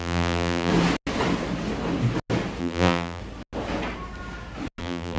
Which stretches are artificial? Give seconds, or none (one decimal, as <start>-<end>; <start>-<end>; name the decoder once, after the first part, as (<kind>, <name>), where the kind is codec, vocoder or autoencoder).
0.0-0.7 (vocoder, BigVGAN v2); 2.6-3.2; 4.8-5.2